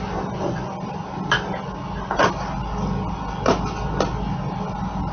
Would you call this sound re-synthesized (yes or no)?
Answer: no